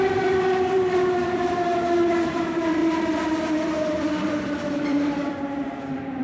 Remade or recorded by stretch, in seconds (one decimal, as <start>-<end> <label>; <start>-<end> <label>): 0.0-6.2 remade